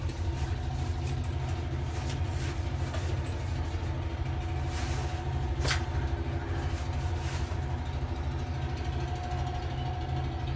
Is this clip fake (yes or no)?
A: no